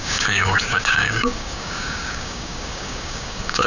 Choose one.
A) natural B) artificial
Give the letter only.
B